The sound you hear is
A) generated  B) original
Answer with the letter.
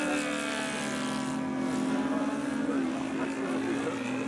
B